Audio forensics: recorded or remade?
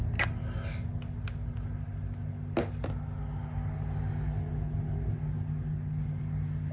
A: recorded